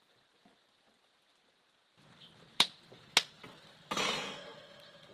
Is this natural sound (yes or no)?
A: yes